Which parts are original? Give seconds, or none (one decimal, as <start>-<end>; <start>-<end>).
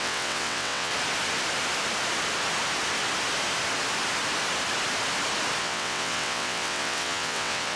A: 0.9-5.6